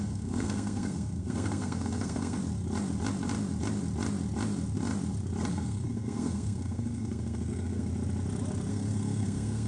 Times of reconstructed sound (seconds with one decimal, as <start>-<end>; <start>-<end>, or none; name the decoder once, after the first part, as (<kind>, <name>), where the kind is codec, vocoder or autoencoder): 0.0-2.4 (codec, SNAC); 5.5-7.9; 8.7-9.7